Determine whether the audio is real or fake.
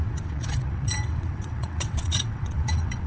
fake